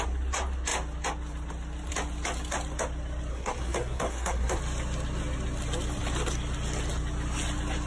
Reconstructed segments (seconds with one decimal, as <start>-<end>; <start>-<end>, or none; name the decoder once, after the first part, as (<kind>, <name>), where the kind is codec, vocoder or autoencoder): 3.3-4.6 (codec, SNAC)